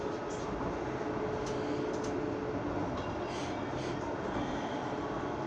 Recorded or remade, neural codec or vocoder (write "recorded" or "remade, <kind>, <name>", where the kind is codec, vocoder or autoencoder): recorded